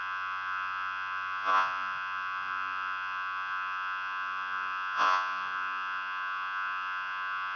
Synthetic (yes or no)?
yes